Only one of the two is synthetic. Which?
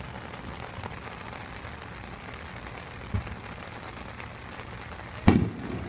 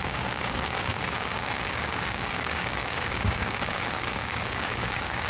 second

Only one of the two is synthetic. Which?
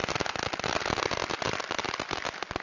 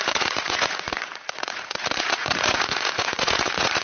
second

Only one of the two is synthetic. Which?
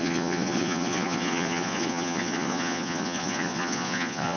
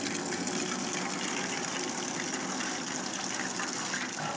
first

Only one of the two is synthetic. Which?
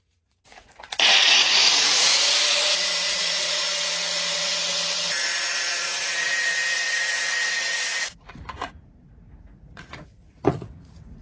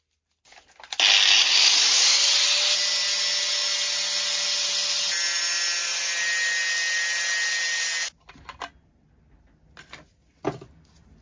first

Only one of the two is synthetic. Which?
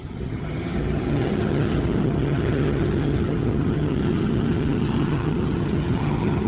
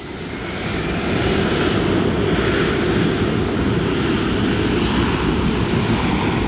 first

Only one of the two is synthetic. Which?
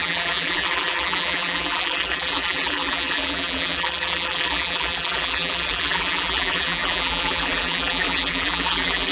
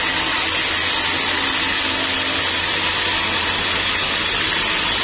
first